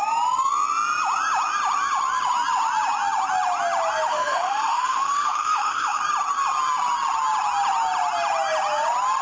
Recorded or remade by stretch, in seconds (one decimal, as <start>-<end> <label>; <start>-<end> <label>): 0.0-4.1 recorded; 4.1-6.0 remade; 6.0-9.2 recorded